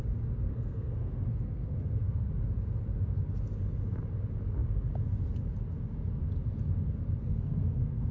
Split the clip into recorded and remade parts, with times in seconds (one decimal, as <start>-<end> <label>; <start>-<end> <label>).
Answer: 0.0-0.5 recorded; 0.5-2.3 remade; 2.3-7.2 recorded; 7.2-8.1 remade